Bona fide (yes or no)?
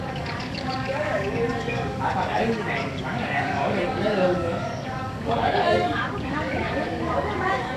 no